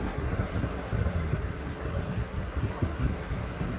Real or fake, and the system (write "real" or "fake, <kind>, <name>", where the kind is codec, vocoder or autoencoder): fake, codec, SNAC